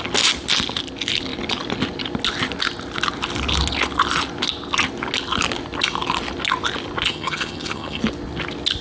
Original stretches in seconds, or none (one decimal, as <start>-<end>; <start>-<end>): 0.0-7.1; 8.0-8.8